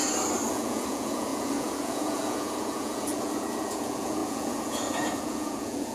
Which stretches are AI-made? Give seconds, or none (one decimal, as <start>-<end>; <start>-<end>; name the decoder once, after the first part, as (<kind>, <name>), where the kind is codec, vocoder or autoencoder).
0.5-5.9 (vocoder, Vocos)